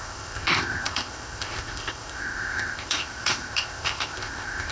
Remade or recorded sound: remade